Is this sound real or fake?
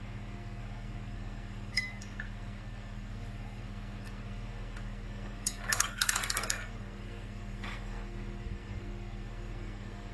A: fake